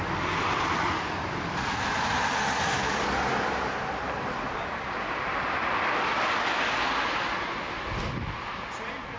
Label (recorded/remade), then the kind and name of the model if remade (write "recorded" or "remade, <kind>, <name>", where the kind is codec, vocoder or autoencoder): recorded